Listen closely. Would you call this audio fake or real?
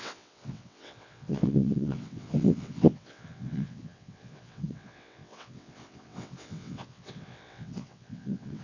fake